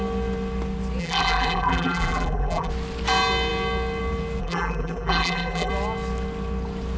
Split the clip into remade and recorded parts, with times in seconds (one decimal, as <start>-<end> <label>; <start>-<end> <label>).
0.0-1.0 recorded; 1.0-2.7 remade; 2.7-4.4 recorded; 4.4-5.7 remade; 5.7-7.0 recorded